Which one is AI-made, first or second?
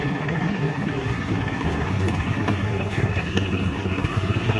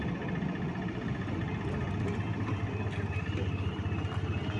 first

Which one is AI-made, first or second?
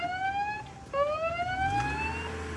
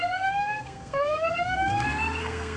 second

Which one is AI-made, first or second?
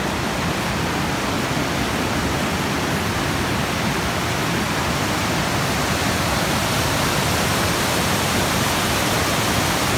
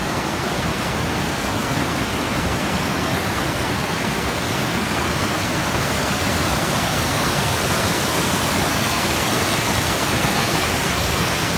second